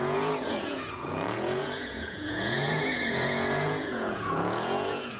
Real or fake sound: fake